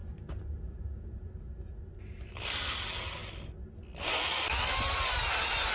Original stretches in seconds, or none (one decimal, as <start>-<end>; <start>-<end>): 0.0-5.7